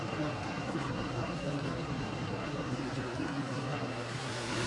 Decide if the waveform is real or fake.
fake